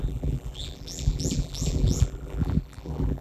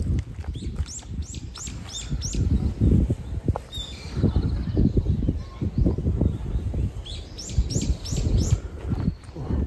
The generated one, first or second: first